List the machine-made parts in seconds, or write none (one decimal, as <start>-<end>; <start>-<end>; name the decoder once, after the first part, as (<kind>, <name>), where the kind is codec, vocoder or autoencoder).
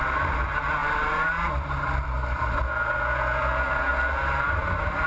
0.8-2.6 (vocoder, BigVGAN v2); 3.9-5.1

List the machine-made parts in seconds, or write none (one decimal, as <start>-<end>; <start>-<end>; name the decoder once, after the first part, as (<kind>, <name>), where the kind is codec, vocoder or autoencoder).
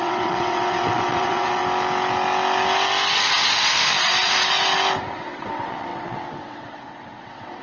0.0-1.6 (vocoder, WaveNeXt); 5.1-7.6